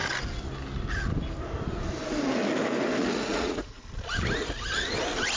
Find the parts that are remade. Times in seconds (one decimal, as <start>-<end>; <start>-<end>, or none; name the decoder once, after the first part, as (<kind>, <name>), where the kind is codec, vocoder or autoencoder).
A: 3.0-3.8 (vocoder, Vocos)